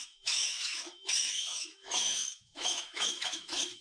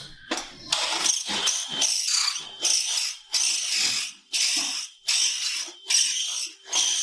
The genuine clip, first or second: second